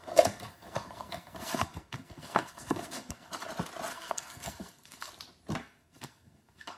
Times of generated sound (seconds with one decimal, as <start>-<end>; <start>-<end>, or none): 0.0-3.3; 3.9-5.1; 5.6-6.8